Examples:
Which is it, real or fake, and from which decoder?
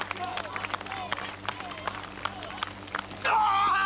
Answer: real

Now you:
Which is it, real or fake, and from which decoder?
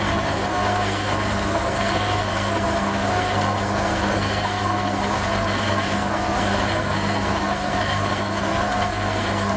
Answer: fake, codec, SNAC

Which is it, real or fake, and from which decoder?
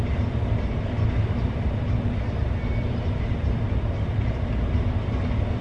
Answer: real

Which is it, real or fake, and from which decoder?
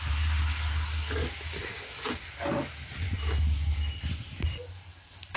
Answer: real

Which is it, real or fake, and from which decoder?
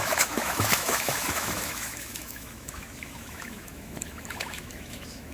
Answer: fake, autoencoder, DAC-VAE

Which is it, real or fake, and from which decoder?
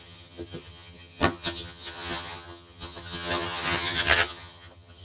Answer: fake, vocoder, HiFi-GAN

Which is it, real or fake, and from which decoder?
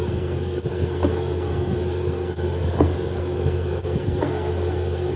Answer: fake, codec, SNAC